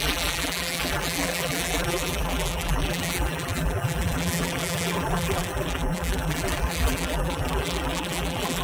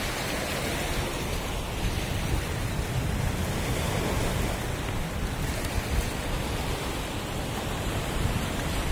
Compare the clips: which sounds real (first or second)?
second